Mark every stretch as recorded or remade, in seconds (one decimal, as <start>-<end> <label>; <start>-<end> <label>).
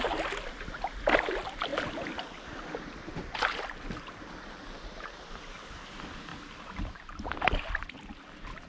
0.0-6.3 recorded; 6.3-8.7 remade